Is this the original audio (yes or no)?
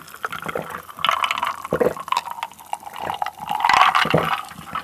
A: yes